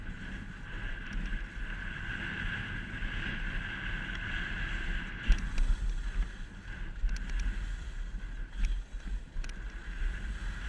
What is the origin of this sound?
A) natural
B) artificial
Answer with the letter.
A